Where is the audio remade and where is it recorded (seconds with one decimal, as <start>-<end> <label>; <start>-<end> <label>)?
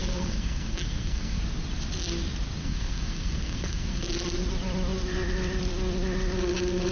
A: 0.0-1.4 remade; 1.4-2.6 recorded; 2.6-4.1 remade; 4.1-6.9 recorded